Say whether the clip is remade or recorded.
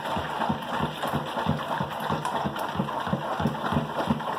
recorded